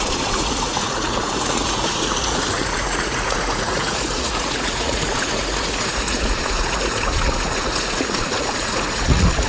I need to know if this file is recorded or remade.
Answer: remade